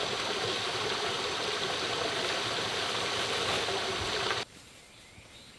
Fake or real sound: real